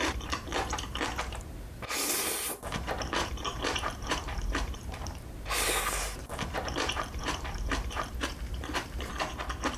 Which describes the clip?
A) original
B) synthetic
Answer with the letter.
B